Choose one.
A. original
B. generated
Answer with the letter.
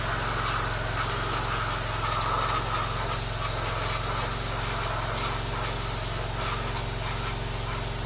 A